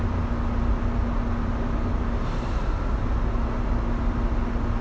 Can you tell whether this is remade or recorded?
recorded